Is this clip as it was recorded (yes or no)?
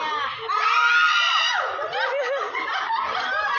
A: yes